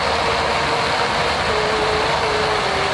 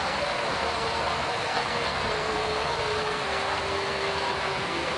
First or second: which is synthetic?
second